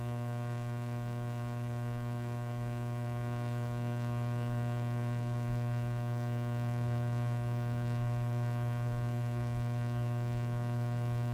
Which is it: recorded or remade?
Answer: remade